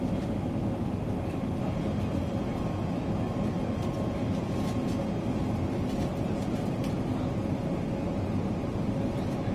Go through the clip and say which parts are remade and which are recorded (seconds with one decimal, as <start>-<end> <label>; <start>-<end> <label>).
0.0-6.1 recorded; 6.1-6.9 remade; 6.9-9.5 recorded